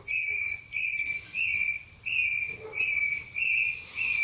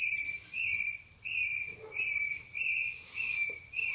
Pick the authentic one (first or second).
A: first